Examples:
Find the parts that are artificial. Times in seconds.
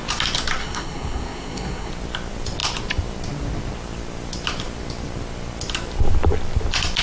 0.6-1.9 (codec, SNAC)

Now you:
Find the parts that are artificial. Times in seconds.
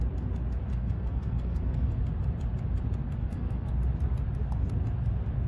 0.7-2.0 (codec, SNAC); 3.2-3.7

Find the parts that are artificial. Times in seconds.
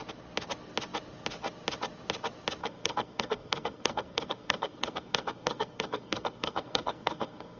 2.6-7.6 (codec, SNAC)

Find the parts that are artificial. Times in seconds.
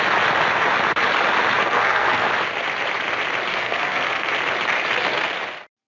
1.6-2.3 (codec, SNAC); 3.5-4.3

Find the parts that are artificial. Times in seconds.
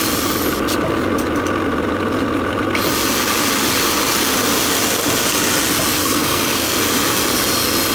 5.9-6.8 (codec, SNAC)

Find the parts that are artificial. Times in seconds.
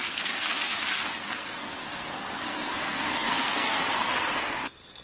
0.0-5.0 (codec, SNAC)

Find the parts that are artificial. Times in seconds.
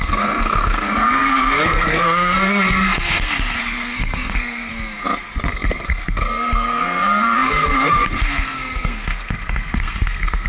0.0-4.7 (codec, SNAC); 5.5-10.5